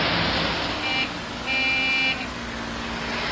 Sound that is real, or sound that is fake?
real